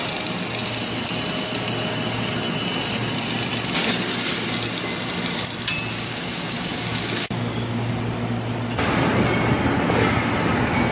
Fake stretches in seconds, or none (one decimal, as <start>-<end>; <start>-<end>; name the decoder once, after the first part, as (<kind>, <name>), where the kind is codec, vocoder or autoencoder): 5.9-7.9 (codec, DAC)